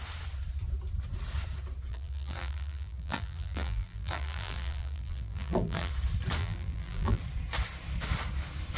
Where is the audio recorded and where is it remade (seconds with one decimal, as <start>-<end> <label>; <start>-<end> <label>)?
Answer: 0.0-1.9 recorded; 1.9-5.9 remade; 5.9-6.4 recorded; 6.4-7.2 remade; 7.2-8.8 recorded